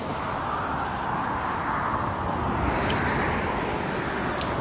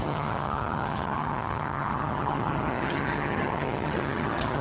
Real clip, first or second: first